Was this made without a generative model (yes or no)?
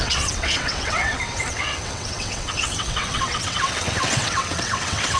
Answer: no